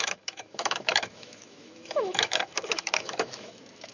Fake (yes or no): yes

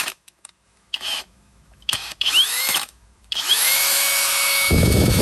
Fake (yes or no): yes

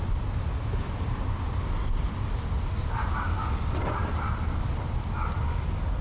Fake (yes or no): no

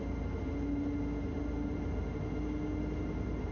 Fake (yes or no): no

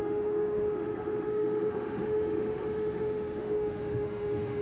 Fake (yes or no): yes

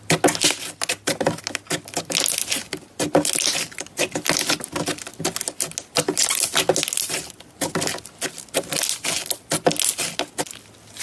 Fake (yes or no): no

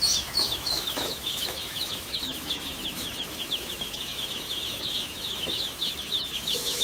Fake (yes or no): yes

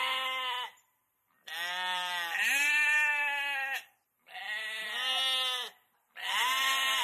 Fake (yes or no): no